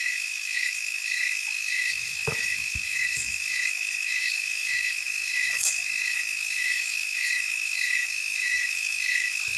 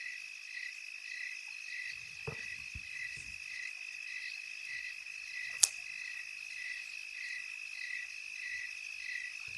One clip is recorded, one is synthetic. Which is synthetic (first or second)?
first